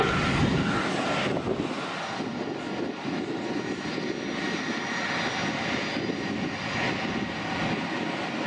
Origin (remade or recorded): recorded